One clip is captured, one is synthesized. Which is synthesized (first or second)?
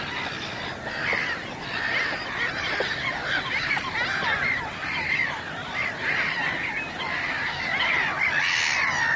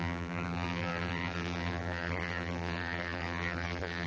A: second